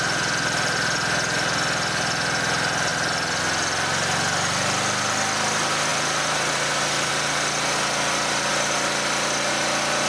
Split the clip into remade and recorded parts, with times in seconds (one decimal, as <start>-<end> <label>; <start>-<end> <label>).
0.0-10.1 recorded